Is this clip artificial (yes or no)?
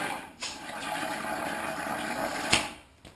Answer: no